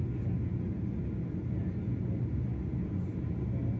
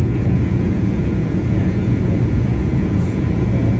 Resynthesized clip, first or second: second